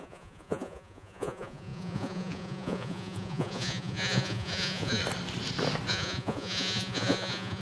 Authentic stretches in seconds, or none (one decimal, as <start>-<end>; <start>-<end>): 5.0-5.9